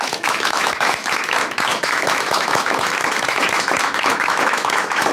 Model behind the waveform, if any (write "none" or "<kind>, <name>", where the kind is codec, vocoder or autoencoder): autoencoder, DAC-VAE